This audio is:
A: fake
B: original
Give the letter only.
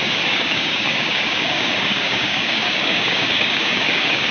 A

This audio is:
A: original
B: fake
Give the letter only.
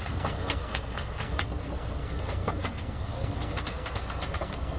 B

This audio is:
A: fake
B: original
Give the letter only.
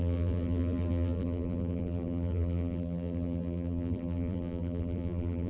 A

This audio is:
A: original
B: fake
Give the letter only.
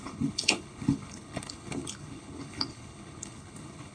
B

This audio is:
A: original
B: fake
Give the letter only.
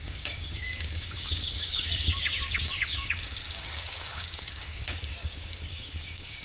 B